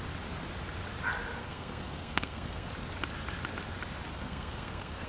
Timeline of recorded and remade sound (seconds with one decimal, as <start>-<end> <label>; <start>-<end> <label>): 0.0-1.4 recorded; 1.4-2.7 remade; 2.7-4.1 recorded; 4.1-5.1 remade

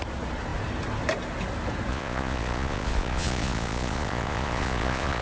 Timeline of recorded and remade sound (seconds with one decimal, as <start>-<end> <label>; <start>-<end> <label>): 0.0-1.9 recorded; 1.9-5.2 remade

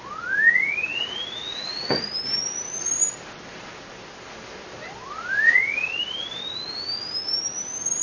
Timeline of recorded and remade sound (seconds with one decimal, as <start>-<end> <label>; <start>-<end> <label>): 0.0-0.9 recorded; 0.9-2.1 remade; 2.1-8.0 recorded

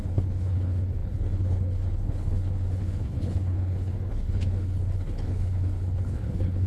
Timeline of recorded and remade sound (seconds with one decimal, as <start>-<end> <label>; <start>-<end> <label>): 0.0-6.7 remade